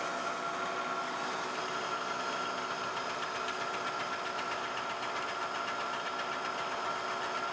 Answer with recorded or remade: recorded